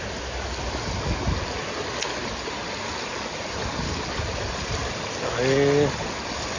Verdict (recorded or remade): recorded